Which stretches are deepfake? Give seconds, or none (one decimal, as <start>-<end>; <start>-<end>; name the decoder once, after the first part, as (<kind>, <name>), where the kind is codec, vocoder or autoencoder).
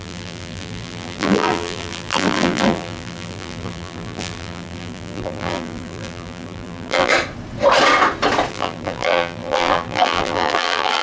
0.0-7.1 (vocoder, BigVGAN v2); 8.5-11.0